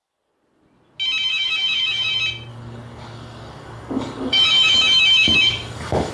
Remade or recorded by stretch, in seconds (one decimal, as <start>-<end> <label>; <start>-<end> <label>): 0.0-1.3 recorded; 1.3-2.1 remade; 2.1-2.5 recorded; 2.5-6.1 remade